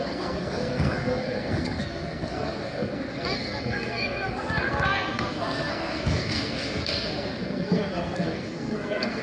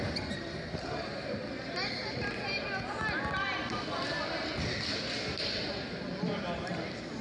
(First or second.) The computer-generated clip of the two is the first